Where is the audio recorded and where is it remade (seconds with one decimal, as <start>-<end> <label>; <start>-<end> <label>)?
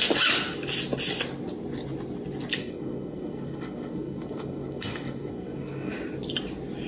0.0-2.6 recorded; 2.6-5.9 remade; 5.9-6.9 recorded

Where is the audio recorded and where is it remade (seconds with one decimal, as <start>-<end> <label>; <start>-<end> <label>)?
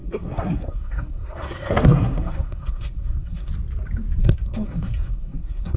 0.0-3.5 remade; 3.5-4.2 recorded; 4.2-5.8 remade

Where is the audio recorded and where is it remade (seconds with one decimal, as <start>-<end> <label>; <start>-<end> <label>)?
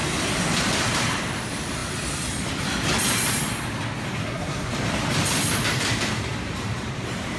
0.0-4.2 recorded; 4.2-4.7 remade; 4.7-7.4 recorded